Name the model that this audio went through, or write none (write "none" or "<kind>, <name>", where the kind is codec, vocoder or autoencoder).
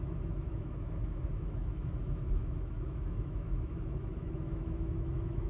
autoencoder, DAC-VAE